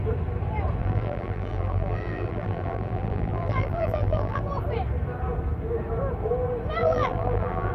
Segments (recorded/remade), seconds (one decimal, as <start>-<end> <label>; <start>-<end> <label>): 0.0-0.8 recorded; 0.8-4.4 remade; 4.4-6.8 recorded; 6.8-7.7 remade